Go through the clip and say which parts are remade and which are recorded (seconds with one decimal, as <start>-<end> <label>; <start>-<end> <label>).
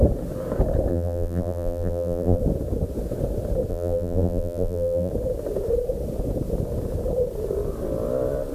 0.0-0.9 recorded; 0.9-2.4 remade; 2.4-3.7 recorded; 3.7-5.1 remade; 5.1-8.5 recorded